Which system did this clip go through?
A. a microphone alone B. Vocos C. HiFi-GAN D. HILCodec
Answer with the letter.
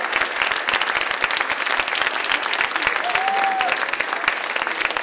A